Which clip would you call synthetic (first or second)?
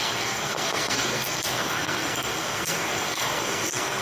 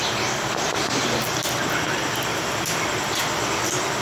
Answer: first